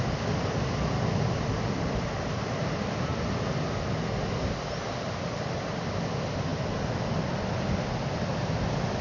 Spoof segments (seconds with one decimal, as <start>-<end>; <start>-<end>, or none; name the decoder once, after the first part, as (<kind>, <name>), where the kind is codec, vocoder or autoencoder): none